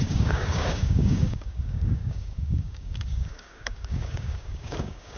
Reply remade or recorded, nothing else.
remade